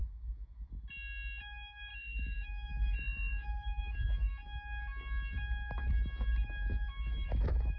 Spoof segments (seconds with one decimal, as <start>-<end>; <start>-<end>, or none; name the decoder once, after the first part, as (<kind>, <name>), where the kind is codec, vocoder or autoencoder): 0.0-0.7 (autoencoder, DAC-VAE); 1.9-4.3; 6.8-7.8